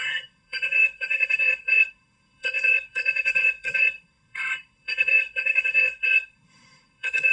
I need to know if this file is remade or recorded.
remade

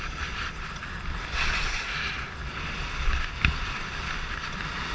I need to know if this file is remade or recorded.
recorded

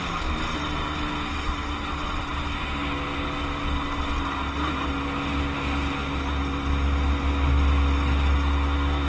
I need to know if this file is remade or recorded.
recorded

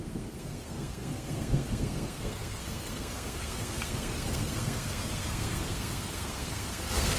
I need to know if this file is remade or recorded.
remade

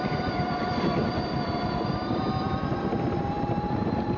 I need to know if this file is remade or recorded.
recorded